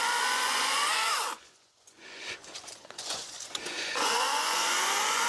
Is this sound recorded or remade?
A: remade